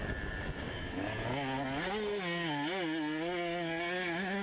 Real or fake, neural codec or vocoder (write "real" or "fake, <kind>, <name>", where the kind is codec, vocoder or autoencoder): real